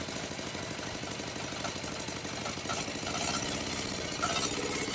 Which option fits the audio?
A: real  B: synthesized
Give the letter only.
A